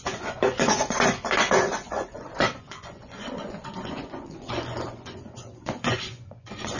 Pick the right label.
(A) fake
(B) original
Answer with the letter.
A